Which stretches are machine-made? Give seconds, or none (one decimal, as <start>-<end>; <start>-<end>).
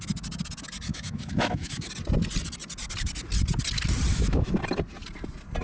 0.9-1.9; 4.1-4.6